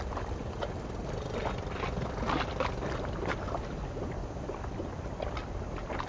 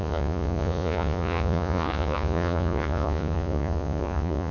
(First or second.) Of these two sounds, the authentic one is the first